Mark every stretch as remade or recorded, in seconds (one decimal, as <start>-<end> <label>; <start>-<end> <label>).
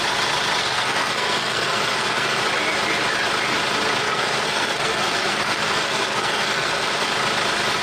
0.0-0.6 recorded; 0.6-2.4 remade; 2.4-4.0 recorded; 4.0-7.1 remade; 7.1-7.8 recorded